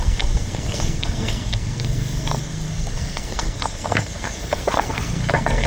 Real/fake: fake